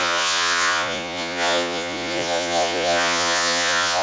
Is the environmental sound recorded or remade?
remade